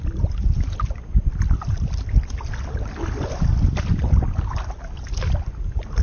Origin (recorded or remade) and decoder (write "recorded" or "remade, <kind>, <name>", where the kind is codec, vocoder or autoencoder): recorded